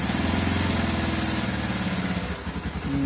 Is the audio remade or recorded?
recorded